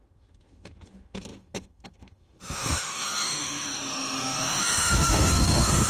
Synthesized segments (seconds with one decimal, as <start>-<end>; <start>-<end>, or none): 0.0-5.9